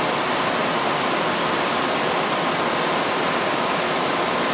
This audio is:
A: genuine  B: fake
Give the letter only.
A